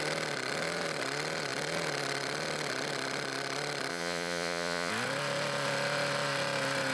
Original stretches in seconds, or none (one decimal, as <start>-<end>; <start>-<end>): 0.0-3.9; 4.9-6.9